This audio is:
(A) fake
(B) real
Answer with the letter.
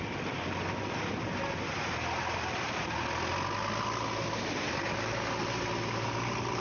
B